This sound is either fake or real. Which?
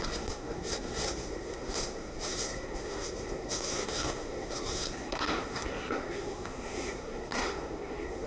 fake